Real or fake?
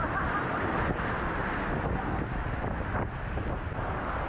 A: real